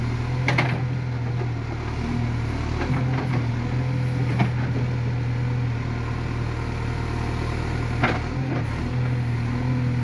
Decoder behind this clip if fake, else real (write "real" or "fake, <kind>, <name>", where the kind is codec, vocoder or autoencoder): real